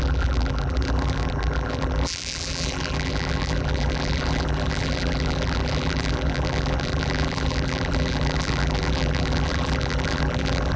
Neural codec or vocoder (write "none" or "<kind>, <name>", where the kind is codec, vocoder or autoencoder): vocoder, BigVGAN v2